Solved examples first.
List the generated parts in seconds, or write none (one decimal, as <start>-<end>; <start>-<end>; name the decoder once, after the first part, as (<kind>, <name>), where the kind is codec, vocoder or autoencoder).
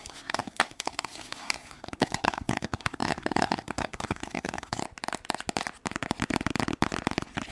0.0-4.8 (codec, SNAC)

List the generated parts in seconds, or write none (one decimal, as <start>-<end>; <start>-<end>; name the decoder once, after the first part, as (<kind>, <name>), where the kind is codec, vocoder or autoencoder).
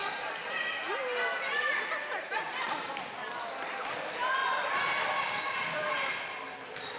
0.9-4.4 (vocoder, BigVGAN v2); 5.6-7.0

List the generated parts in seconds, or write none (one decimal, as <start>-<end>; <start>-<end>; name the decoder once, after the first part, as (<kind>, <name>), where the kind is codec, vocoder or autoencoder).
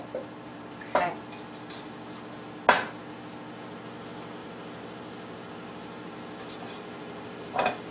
0.5-1.1 (vocoder, BigVGAN v2); 4.4-7.9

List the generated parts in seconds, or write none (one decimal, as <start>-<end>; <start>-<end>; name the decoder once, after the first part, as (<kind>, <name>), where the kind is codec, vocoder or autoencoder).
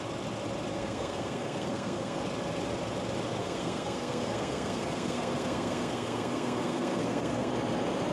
0.7-2.2 (codec, SNAC); 3.4-7.5